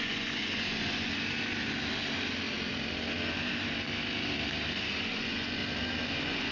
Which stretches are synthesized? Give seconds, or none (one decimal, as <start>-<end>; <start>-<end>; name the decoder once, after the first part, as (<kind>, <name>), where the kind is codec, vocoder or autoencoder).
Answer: 0.0-1.1 (vocoder, Vocos); 5.0-5.6; 6.1-6.5

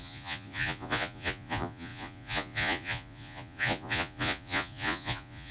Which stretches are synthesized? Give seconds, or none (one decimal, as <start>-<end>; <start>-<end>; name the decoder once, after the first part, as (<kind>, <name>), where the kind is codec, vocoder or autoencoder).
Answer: 0.0-5.5 (vocoder, Vocos)

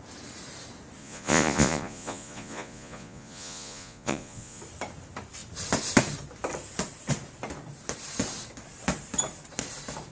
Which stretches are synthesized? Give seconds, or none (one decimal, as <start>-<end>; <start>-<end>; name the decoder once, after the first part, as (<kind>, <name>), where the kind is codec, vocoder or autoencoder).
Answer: 1.0-4.6 (vocoder, Vocos)

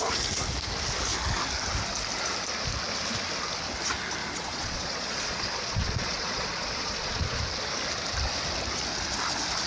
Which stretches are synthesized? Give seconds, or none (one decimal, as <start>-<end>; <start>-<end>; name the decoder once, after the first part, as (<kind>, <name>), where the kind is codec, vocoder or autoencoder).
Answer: 4.2-7.4 (vocoder, Vocos)